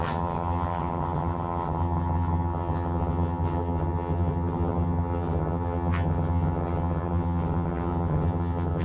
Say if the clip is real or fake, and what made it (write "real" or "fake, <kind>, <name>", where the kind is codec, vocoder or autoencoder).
fake, vocoder, HiFi-GAN